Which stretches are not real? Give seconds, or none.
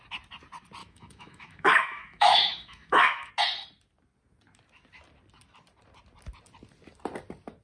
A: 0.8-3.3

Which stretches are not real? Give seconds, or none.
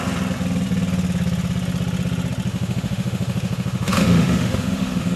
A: 2.5-5.2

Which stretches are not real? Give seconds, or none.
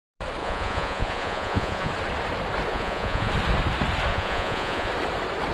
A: 0.4-1.9; 2.7-3.3; 4.1-4.9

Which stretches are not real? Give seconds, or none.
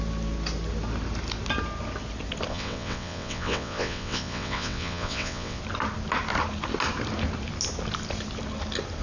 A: 2.5-5.6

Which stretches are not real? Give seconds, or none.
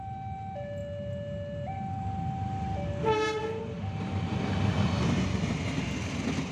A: none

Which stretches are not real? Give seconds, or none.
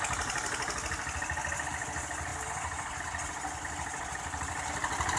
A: none